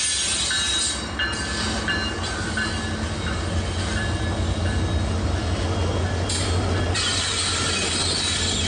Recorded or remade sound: recorded